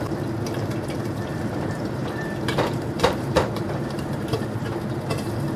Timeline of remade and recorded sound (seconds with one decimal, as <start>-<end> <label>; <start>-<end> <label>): 0.0-1.3 recorded; 1.3-4.7 remade; 4.7-5.6 recorded